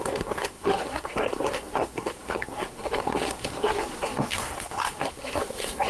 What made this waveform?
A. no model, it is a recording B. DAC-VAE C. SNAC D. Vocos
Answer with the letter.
C